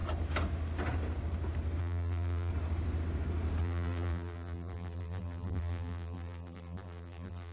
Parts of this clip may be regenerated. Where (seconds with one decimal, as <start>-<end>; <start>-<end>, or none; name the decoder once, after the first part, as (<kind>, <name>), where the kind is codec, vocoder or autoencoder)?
1.8-2.5 (vocoder, BigVGAN v2); 3.6-7.5